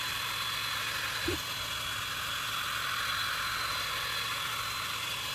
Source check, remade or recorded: recorded